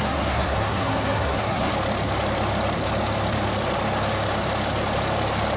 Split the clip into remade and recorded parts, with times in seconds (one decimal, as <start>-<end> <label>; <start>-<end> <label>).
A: 0.0-1.7 remade; 1.7-5.6 recorded